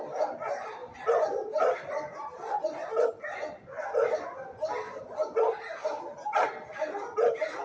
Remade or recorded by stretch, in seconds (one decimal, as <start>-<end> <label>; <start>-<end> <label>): 0.0-7.6 recorded